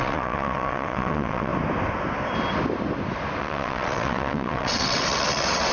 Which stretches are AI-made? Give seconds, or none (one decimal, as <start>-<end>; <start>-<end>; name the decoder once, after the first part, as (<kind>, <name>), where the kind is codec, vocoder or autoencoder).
0.0-1.5 (vocoder, WaveNeXt); 3.4-5.7